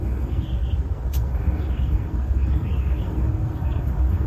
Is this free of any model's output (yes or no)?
no